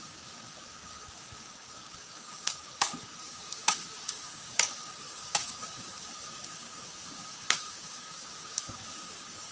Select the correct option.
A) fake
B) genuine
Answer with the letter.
A